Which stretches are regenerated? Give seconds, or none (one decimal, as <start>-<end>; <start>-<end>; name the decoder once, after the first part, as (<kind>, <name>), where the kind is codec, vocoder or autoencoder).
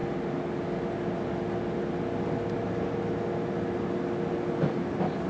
none